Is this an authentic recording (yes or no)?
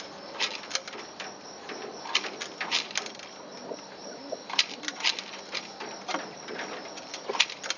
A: yes